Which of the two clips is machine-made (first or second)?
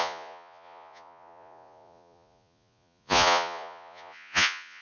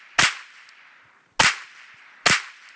first